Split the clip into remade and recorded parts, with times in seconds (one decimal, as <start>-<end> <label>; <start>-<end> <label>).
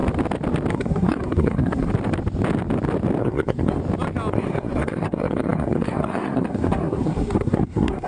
0.0-0.7 recorded; 0.7-1.9 remade; 1.9-3.2 recorded; 3.2-3.8 remade; 3.8-4.3 recorded; 4.3-8.1 remade